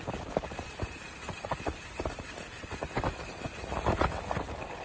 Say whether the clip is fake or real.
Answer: real